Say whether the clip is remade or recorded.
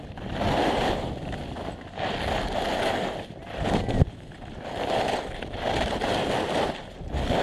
recorded